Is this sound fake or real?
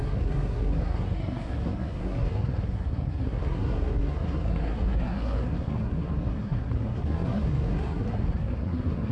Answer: fake